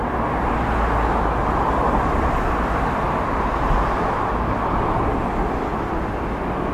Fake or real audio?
real